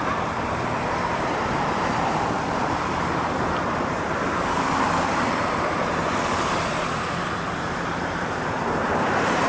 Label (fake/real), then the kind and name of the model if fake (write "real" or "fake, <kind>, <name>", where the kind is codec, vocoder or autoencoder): fake, vocoder, BigVGAN v2